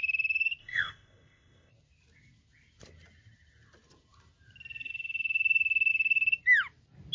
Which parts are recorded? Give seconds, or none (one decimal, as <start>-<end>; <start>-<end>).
0.0-0.6; 1.7-7.1